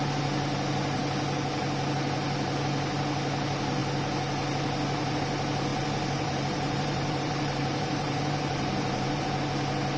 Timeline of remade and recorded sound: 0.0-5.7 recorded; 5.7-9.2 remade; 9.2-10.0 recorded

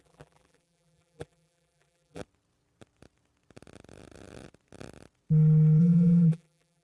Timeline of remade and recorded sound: 0.0-2.2 remade; 2.2-5.8 recorded; 5.8-6.8 remade

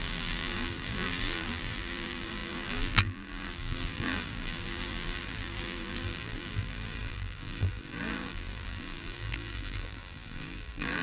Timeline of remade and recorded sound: 0.0-11.0 remade

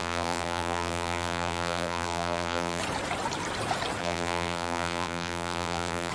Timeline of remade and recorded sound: 0.0-2.8 remade; 2.8-4.0 recorded; 4.0-6.1 remade